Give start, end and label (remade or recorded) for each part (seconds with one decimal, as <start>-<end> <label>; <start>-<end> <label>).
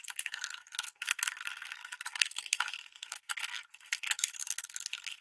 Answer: 0.0-5.2 remade